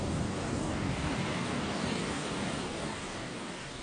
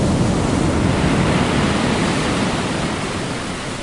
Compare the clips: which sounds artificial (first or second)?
first